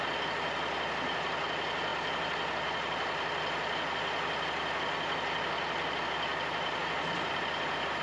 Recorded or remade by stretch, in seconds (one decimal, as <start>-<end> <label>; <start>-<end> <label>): 0.0-8.0 recorded